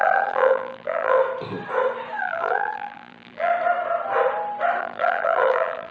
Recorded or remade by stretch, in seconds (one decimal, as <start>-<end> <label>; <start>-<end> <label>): 0.0-1.2 remade; 1.2-2.2 recorded; 2.2-3.5 remade; 3.5-4.8 recorded; 4.8-5.9 remade